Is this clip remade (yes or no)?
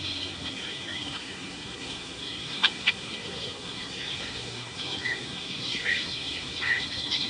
yes